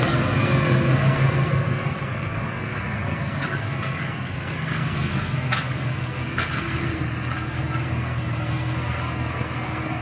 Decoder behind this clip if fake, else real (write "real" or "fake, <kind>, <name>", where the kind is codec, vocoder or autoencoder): fake, codec, SNAC